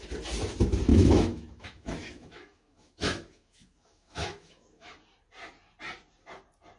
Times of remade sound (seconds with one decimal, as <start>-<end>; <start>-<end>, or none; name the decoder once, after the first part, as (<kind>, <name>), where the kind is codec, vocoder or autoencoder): 0.9-5.0 (autoencoder, DAC-VAE)

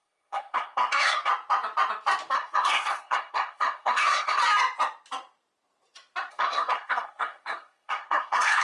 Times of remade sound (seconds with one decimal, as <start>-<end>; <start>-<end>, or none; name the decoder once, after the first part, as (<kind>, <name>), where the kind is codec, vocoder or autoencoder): 0.0-1.3 (codec, SNAC); 2.3-4.4; 6.3-8.6

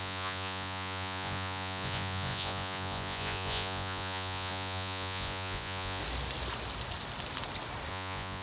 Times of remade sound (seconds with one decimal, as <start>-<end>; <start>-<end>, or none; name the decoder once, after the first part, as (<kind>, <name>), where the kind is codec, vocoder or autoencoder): 0.0-6.0 (vocoder, Vocos); 7.9-8.4

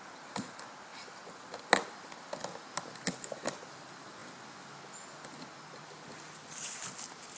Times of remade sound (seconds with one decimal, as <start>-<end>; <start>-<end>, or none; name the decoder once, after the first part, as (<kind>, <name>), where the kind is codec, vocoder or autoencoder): none

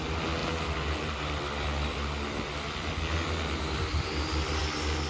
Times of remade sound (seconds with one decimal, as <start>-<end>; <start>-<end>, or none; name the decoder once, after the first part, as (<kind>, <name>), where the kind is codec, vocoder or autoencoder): 0.4-2.9 (vocoder, BigVGAN v2)

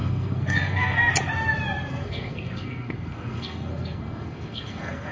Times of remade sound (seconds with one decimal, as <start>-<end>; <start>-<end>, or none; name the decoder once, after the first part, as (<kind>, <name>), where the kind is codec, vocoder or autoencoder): 0.0-1.1 (codec, SNAC); 1.9-5.1

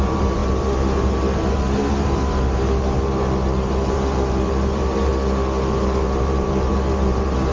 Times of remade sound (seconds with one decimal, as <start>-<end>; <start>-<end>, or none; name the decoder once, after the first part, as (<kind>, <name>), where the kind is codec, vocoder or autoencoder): 0.0-5.1 (vocoder, BigVGAN v2); 5.8-7.5